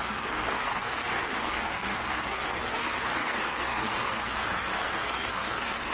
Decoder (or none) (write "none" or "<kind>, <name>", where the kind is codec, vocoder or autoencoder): codec, SNAC